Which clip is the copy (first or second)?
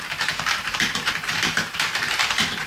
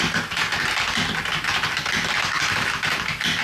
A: first